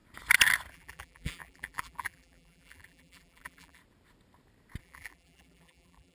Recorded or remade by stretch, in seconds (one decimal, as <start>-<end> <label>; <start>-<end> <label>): 0.0-0.7 recorded; 0.7-3.8 remade; 3.8-4.8 recorded; 4.8-6.1 remade